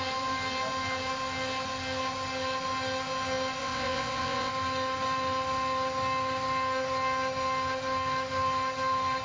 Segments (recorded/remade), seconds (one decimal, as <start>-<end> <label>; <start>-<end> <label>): 0.0-3.6 recorded; 3.6-4.5 remade; 4.5-9.2 recorded